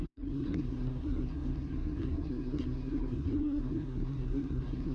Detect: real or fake fake